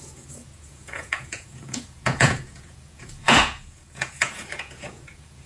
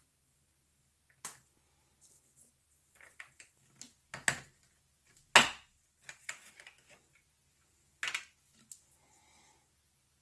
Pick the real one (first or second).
second